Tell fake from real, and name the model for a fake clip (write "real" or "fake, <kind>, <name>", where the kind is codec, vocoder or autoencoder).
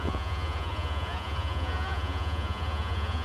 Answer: fake, vocoder, Vocos